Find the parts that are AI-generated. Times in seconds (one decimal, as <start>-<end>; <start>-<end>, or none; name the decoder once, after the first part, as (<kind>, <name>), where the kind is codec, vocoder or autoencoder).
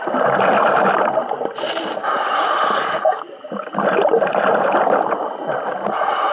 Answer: 0.0-2.0 (vocoder, BigVGAN v2); 2.5-3.4; 4.5-6.3